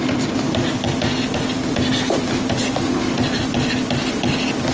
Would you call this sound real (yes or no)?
yes